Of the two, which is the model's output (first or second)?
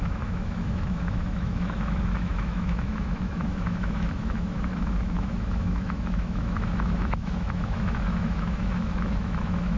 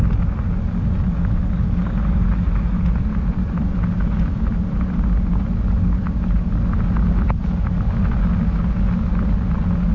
first